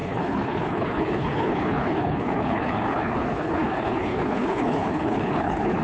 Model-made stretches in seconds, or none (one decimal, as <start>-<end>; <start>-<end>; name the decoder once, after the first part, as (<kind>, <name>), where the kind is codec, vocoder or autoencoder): 0.0-5.8 (codec, HILCodec)